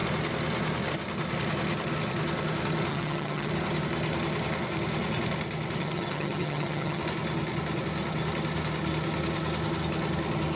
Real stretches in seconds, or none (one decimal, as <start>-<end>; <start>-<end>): 0.0-2.9; 3.5-5.8; 7.0-10.6